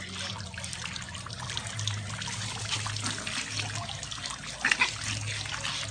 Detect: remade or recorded recorded